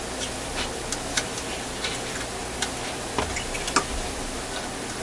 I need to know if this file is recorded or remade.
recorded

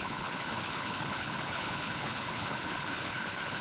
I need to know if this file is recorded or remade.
remade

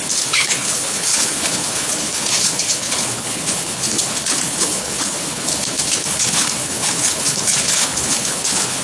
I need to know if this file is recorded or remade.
remade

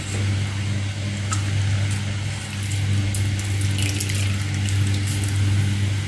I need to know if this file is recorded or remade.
recorded